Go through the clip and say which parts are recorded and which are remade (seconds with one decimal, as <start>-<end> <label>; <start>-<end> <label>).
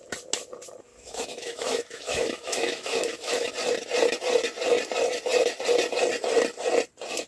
0.0-0.9 recorded; 0.9-3.5 remade; 3.5-7.3 recorded